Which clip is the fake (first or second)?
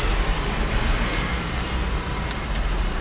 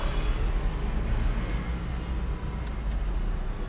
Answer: first